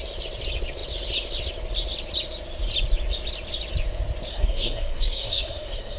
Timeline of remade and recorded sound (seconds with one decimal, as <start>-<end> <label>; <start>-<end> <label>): 0.0-4.3 recorded; 4.3-6.0 remade